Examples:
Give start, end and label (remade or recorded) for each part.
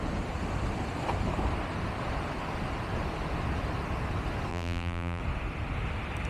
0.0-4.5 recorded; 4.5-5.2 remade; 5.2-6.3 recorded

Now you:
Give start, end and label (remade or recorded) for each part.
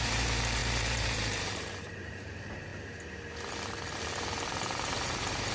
0.0-2.7 remade; 2.7-3.9 recorded; 3.9-5.5 remade